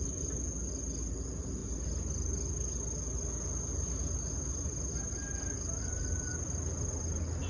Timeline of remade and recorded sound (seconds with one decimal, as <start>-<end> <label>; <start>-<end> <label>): 0.0-7.5 recorded